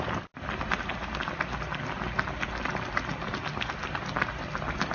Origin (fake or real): real